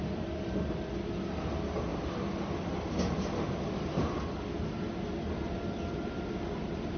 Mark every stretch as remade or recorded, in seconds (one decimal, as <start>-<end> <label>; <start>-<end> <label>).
0.0-7.0 recorded